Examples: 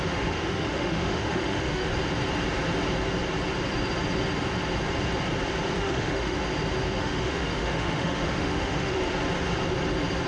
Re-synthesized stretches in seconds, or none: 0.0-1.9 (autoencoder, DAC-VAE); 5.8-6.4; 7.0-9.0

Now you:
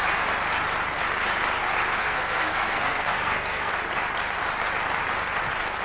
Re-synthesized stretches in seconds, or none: 2.0-3.7 (codec, SNAC)

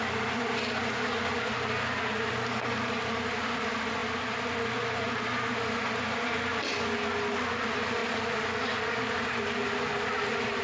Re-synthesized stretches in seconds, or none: none

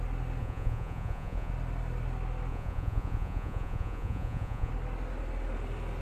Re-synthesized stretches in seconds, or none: 0.4-1.5 (vocoder, Vocos); 2.5-4.7

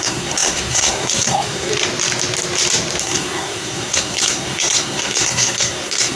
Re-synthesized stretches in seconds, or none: 0.0-1.7 (codec, SNAC); 3.0-6.2